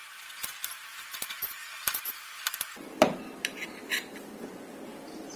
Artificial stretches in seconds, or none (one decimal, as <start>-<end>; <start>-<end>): 0.6-3.8